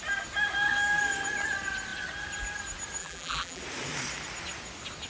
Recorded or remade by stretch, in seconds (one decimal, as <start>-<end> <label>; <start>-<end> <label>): 0.0-3.0 recorded; 3.0-3.6 remade; 3.6-5.1 recorded